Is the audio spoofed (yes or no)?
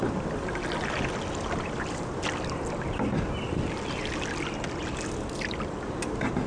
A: no